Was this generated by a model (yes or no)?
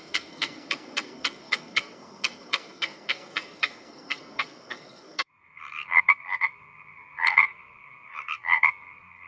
yes